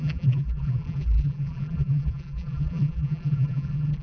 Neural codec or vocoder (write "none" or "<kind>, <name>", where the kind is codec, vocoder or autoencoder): vocoder, BigVGAN v2